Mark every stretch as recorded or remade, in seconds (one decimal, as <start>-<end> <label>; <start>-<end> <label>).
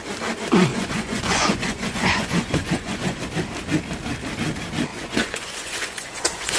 0.0-0.7 recorded; 0.7-3.2 remade; 3.2-4.9 recorded; 4.9-6.6 remade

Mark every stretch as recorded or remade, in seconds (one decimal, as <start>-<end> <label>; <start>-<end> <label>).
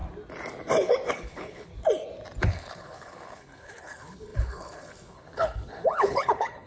0.0-1.1 recorded; 1.1-1.7 remade; 1.7-2.4 recorded; 2.4-6.7 remade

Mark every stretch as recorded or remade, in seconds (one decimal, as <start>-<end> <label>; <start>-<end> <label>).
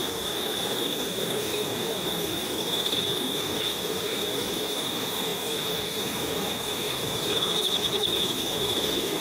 0.0-9.2 remade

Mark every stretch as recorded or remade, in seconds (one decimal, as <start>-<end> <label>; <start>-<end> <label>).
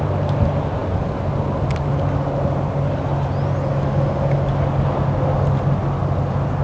0.0-6.6 recorded